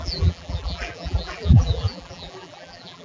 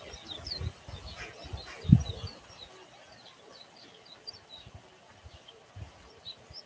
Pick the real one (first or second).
second